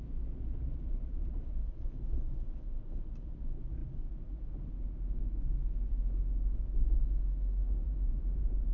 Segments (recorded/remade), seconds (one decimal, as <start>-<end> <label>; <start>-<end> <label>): 0.0-0.6 recorded; 0.6-1.8 remade; 1.8-7.8 recorded; 7.8-8.7 remade